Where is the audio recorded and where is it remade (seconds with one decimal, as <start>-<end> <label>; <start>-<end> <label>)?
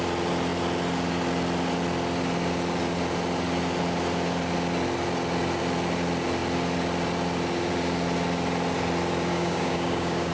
0.0-9.3 recorded; 9.3-10.3 remade